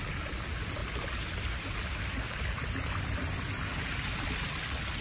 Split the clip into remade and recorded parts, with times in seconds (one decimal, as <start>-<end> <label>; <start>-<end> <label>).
0.0-0.8 recorded; 0.8-3.8 remade; 3.8-5.0 recorded